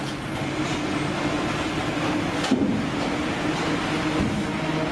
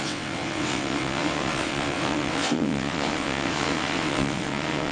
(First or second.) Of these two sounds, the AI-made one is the second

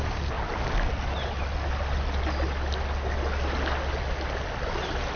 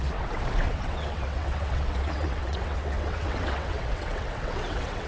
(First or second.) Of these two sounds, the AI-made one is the second